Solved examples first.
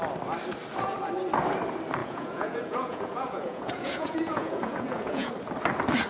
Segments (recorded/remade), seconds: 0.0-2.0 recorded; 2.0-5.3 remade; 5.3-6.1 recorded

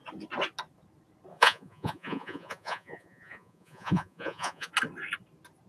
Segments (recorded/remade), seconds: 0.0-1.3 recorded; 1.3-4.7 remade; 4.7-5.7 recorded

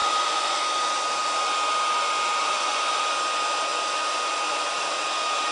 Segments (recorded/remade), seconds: 0.0-0.6 remade; 0.6-2.4 recorded; 2.4-3.0 remade; 3.0-5.5 recorded